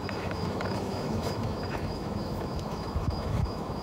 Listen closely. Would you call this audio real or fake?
fake